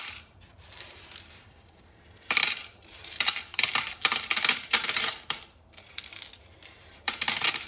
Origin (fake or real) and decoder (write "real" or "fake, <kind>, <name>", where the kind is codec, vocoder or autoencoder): fake, vocoder, BigVGAN v2